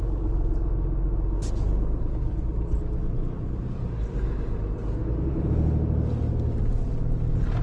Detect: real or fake real